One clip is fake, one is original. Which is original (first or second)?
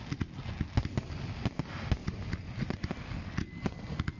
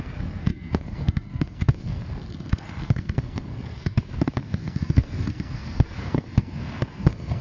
first